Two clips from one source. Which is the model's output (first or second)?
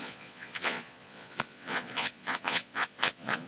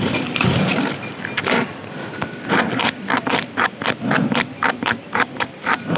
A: first